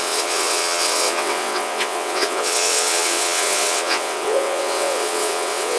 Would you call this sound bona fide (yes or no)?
no